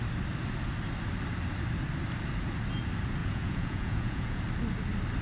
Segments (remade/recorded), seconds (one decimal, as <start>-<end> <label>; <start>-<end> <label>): 0.0-3.2 recorded; 3.2-4.4 remade; 4.4-5.2 recorded